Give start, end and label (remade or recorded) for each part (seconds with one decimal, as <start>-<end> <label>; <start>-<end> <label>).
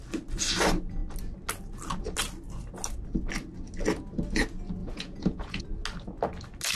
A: 0.0-4.8 recorded; 4.8-5.6 remade; 5.6-6.8 recorded